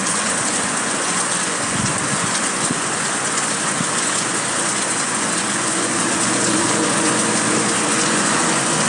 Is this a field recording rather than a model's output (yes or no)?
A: no